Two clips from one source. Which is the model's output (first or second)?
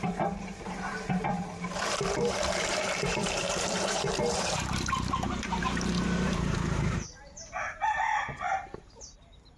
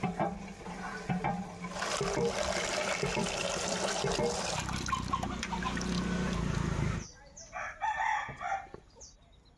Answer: first